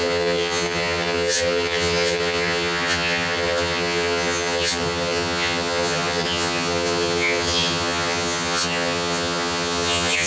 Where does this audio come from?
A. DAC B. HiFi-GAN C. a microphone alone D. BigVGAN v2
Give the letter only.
B